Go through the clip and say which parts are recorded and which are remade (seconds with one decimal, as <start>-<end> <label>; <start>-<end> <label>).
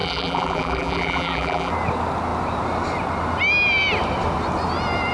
0.0-1.7 remade; 1.7-5.1 recorded